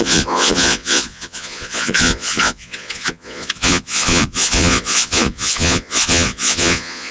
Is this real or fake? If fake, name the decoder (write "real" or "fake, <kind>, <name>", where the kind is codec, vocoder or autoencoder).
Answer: fake, vocoder, Vocos